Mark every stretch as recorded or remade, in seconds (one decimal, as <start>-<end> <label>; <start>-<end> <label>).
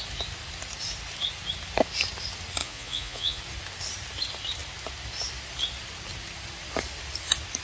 0.0-2.6 recorded; 2.6-3.4 remade; 3.4-7.6 recorded